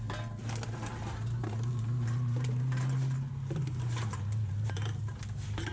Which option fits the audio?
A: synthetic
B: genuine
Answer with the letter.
B